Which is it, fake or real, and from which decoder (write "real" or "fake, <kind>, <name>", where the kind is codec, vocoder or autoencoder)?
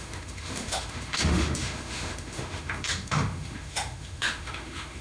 fake, autoencoder, DAC-VAE